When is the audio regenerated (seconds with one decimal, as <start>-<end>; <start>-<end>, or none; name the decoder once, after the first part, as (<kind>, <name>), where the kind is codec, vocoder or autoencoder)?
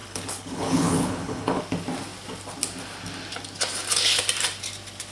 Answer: 0.0-1.6 (codec, HILCodec)